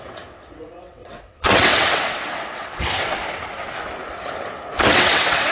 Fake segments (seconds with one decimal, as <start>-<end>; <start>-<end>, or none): 0.0-3.2; 4.9-5.5